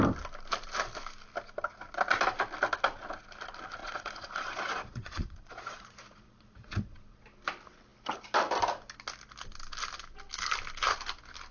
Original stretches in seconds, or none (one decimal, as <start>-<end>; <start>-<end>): 0.0-3.8; 7.2-11.5